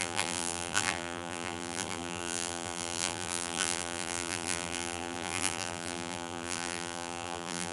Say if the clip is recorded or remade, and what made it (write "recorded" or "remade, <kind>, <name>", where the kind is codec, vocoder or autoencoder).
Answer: remade, vocoder, BigVGAN v2